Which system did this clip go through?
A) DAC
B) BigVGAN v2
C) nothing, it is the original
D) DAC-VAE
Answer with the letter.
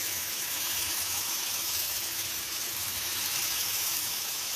D